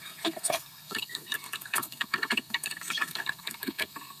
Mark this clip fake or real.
fake